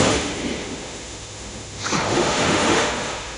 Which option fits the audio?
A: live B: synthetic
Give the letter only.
B